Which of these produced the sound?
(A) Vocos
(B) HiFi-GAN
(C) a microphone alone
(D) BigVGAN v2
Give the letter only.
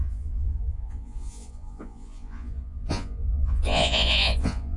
A